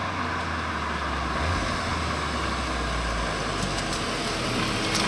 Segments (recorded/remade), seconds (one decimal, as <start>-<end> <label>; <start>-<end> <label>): 0.0-5.1 recorded